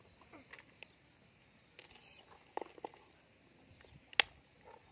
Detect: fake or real real